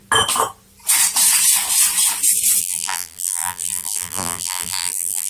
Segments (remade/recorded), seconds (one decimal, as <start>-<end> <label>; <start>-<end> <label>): 0.0-2.6 recorded; 2.6-5.3 remade